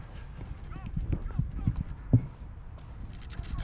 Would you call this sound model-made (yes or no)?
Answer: no